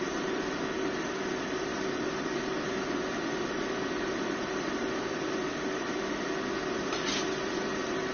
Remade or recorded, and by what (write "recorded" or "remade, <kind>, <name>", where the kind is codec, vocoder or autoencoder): recorded